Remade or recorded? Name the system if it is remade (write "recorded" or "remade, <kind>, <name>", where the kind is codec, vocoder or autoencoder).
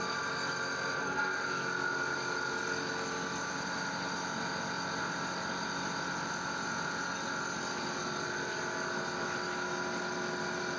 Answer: recorded